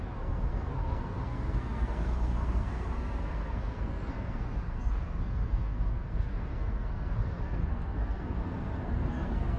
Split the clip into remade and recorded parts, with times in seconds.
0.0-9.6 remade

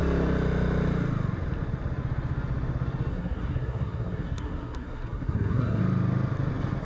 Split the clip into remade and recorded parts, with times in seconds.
0.0-3.1 recorded; 3.1-5.8 remade; 5.8-6.8 recorded

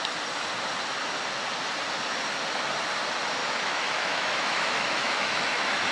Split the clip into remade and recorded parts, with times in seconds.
0.0-3.4 recorded; 3.4-5.9 remade

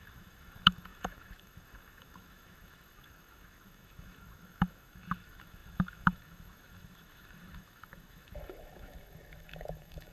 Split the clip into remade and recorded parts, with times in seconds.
0.0-10.1 remade

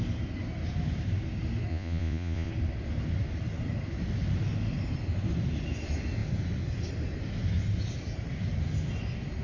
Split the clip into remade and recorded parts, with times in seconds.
0.0-1.7 recorded; 1.7-2.5 remade; 2.5-9.4 recorded

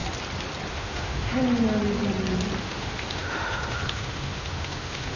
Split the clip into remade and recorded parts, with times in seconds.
0.0-0.7 recorded; 0.7-1.3 remade; 1.3-2.6 recorded; 2.6-5.2 remade

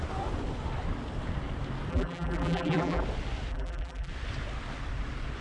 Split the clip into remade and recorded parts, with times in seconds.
0.0-1.9 recorded; 1.9-3.0 remade; 3.0-3.5 recorded; 3.5-4.1 remade; 4.1-5.4 recorded